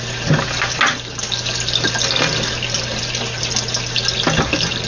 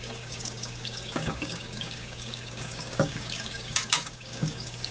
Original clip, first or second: first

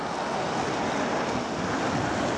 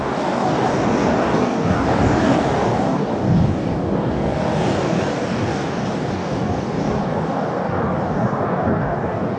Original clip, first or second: first